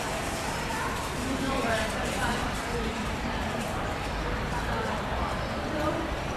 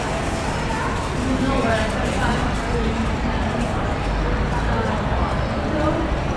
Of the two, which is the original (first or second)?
second